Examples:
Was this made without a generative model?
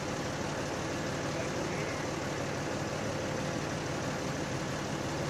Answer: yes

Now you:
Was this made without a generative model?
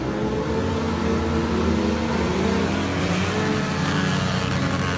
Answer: yes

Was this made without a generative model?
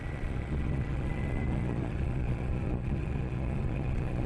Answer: no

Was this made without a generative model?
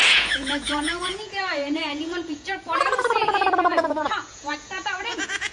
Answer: no